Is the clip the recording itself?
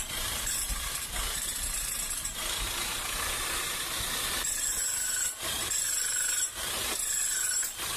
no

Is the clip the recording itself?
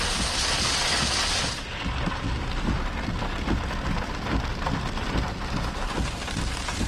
no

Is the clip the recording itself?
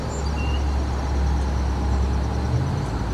yes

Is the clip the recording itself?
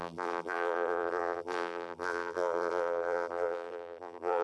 no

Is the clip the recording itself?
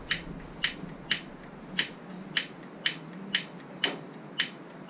yes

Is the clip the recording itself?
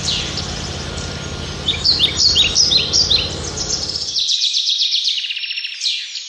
no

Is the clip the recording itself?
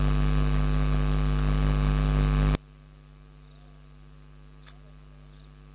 yes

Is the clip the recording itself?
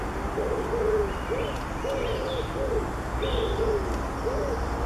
yes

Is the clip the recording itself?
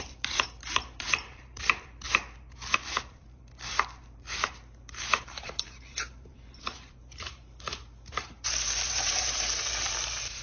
no